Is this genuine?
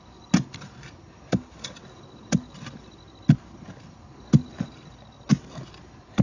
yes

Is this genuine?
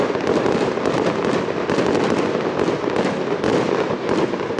yes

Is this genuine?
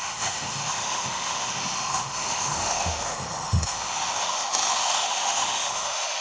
no